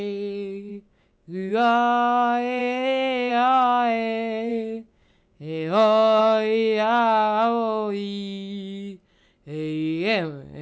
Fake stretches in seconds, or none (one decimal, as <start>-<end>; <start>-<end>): 0.7-1.5; 2.6-3.3; 4.5-6.2